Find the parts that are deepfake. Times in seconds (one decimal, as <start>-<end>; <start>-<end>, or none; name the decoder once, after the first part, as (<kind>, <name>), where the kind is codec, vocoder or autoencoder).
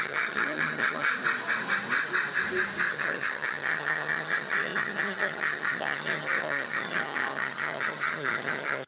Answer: 0.0-1.1 (vocoder, HiFi-GAN); 2.9-8.9